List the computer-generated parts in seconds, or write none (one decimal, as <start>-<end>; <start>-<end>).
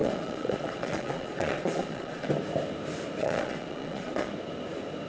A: 0.0-2.3; 3.2-4.3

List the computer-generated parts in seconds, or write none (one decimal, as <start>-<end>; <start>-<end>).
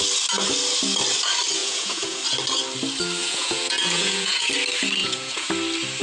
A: 1.6-2.2; 3.2-4.5; 5.0-5.5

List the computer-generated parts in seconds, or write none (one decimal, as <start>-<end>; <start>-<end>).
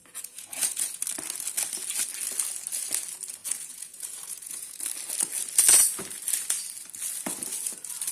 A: 0.0-1.0; 3.4-4.8